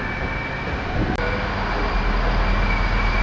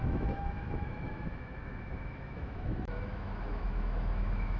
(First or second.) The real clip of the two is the first